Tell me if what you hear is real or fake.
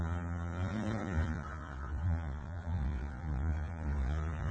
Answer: fake